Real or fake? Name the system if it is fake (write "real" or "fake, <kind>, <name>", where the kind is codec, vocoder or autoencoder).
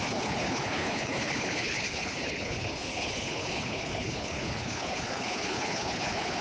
fake, codec, HILCodec